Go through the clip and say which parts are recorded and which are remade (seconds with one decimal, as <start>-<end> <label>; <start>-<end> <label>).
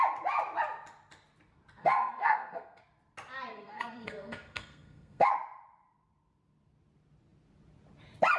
0.0-1.8 recorded; 1.8-2.8 remade; 2.8-3.5 recorded; 3.5-5.3 remade; 5.3-8.4 recorded